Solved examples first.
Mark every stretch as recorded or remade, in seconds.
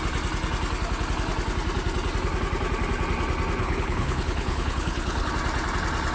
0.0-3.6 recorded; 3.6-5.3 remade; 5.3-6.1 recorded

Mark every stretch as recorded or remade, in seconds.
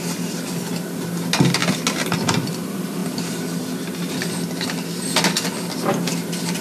0.0-6.6 recorded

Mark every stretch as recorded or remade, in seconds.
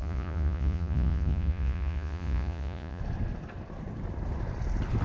0.0-3.0 remade; 3.0-5.0 recorded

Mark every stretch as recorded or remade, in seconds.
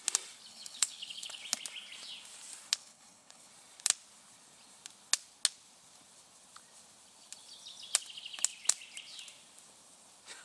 0.0-0.5 recorded; 0.5-1.4 remade; 1.4-2.8 recorded; 2.8-3.5 remade; 3.5-10.4 recorded